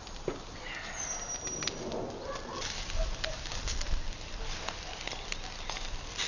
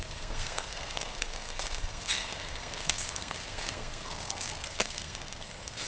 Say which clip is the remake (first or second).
second